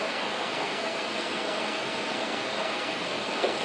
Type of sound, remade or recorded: remade